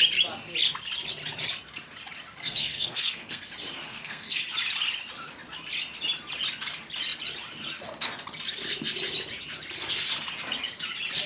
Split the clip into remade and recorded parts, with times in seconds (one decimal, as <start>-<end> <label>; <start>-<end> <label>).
0.0-2.4 recorded; 2.4-3.4 remade; 3.4-3.9 recorded; 3.9-4.4 remade; 4.4-11.3 recorded